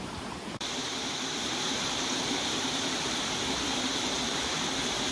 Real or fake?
fake